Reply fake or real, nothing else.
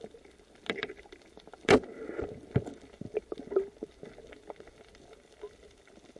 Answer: real